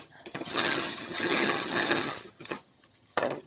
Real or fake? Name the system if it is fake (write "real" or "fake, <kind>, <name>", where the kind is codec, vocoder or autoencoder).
fake, vocoder, HiFi-GAN